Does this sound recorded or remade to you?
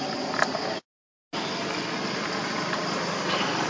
recorded